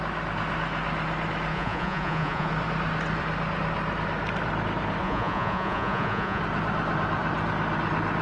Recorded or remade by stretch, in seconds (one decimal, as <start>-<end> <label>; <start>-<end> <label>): 0.0-1.5 recorded; 1.5-2.5 remade; 2.5-5.0 recorded; 5.0-6.4 remade; 6.4-8.2 recorded